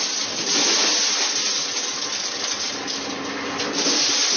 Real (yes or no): yes